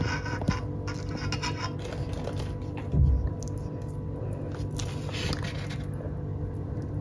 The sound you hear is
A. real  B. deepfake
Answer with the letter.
A